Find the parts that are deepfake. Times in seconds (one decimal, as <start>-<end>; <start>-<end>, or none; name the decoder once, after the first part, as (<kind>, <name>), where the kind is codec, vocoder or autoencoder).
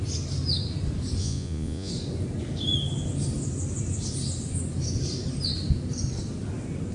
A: 1.2-1.9 (vocoder, Vocos)